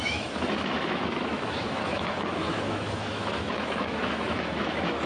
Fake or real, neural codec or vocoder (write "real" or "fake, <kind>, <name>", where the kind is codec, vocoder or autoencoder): fake, autoencoder, DAC-VAE